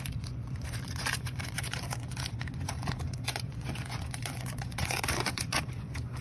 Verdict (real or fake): fake